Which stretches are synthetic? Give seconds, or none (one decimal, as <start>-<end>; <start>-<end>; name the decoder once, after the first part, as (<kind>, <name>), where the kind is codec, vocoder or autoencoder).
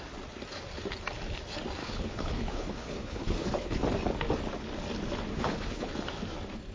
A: 1.8-3.8 (codec, HILCodec); 5.3-5.9